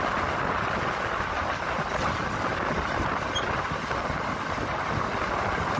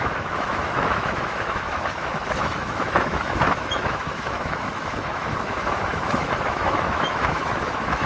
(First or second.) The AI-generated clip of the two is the second